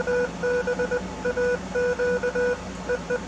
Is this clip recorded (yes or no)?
yes